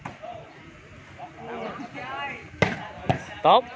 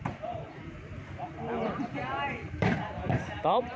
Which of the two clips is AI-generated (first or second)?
second